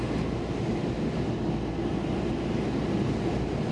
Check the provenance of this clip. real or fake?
real